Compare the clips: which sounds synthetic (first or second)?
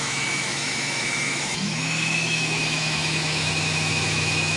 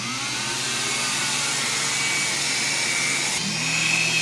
first